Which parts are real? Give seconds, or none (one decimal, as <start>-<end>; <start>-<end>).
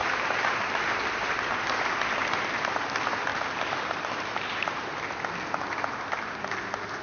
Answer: 1.8-3.3; 5.0-7.0